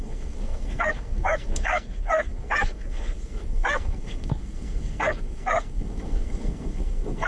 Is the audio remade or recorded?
remade